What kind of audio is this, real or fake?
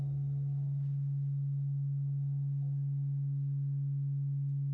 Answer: real